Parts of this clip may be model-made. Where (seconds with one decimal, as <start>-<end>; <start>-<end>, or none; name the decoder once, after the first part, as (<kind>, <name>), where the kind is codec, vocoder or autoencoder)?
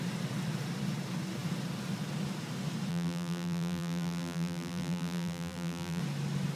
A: 2.9-6.0 (vocoder, BigVGAN v2)